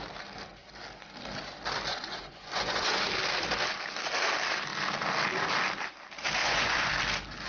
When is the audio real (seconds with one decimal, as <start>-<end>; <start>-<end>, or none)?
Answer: 0.0-1.9; 3.1-6.4; 6.9-7.5

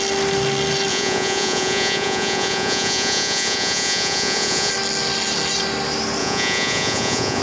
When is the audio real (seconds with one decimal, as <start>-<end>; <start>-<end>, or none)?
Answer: 0.0-0.9; 4.7-6.2

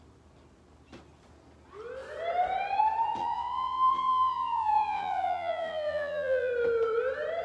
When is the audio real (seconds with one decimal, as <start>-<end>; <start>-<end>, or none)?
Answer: 0.0-3.2; 6.5-7.4

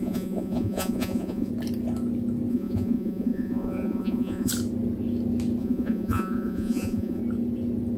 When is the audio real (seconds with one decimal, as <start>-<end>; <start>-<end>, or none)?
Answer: 1.5-2.5; 4.5-5.6; 7.2-8.0